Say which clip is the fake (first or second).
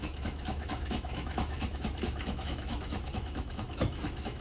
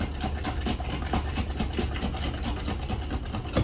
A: first